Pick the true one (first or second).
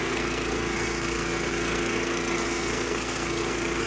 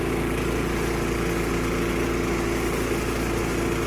second